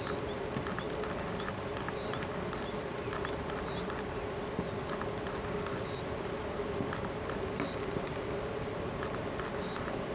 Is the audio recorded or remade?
recorded